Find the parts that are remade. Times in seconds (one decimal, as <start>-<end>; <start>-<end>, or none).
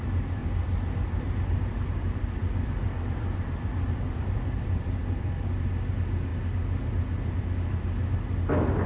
0.4-5.3